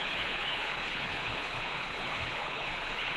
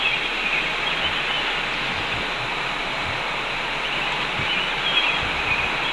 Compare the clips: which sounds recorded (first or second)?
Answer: second